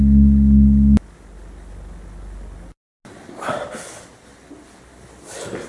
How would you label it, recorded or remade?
recorded